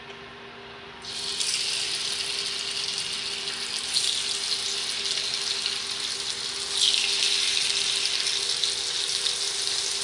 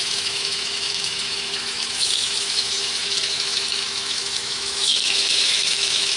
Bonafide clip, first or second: first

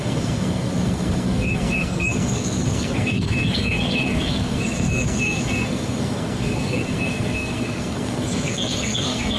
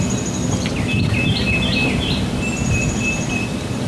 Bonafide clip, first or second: second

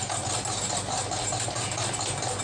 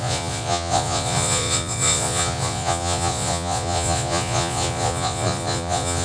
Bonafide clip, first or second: first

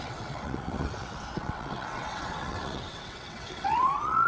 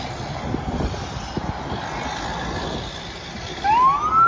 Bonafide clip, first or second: second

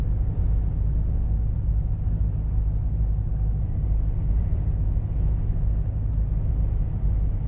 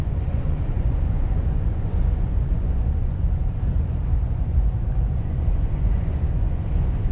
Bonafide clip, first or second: first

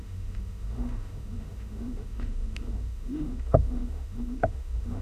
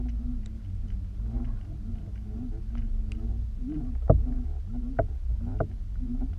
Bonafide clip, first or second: second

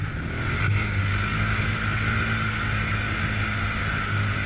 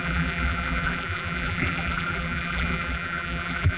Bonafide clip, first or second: first